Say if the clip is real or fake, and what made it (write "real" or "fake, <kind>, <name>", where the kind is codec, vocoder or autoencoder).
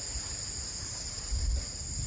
real